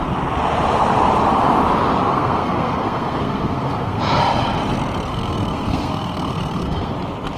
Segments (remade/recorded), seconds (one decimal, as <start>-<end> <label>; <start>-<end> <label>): 0.0-2.1 recorded; 2.1-4.0 remade; 4.0-5.1 recorded; 5.1-6.9 remade; 6.9-7.4 recorded